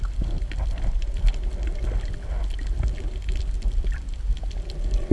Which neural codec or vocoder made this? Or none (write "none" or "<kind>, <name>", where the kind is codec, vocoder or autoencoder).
none